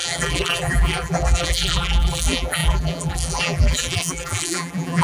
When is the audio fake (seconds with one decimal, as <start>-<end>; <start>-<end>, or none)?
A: 0.0-5.0